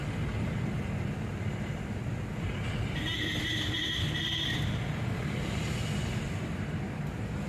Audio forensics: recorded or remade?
recorded